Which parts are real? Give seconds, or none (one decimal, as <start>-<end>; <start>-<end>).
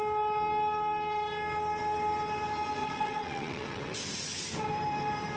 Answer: 0.0-2.8; 4.0-5.4